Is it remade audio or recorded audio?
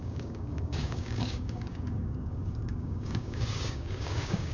remade